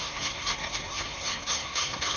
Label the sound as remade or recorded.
remade